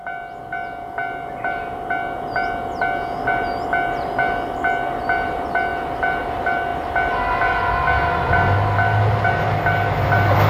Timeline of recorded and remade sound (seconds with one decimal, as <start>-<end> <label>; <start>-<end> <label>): 0.0-10.5 recorded